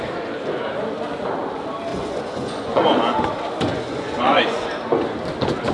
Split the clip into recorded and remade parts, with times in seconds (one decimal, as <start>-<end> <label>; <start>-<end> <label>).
0.0-1.9 recorded; 1.9-3.0 remade; 3.0-3.7 recorded; 3.7-4.7 remade; 4.7-5.7 recorded